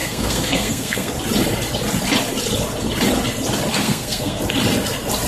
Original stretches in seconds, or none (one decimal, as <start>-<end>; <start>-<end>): 1.1-3.7; 4.4-5.3